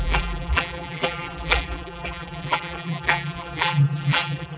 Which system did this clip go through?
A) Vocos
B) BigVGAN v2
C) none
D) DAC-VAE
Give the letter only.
B